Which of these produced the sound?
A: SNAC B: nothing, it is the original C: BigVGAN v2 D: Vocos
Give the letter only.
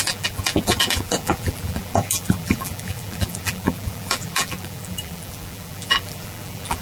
C